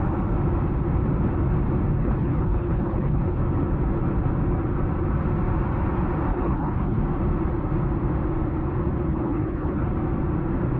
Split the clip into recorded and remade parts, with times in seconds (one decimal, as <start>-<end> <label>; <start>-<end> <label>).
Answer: 0.0-2.0 recorded; 2.0-3.4 remade; 3.4-6.3 recorded; 6.3-7.0 remade; 7.0-9.1 recorded; 9.1-9.9 remade; 9.9-10.8 recorded